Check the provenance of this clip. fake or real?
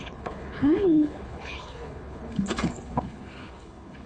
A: fake